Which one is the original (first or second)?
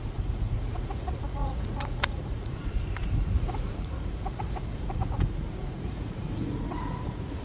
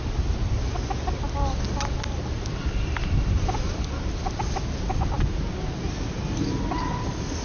second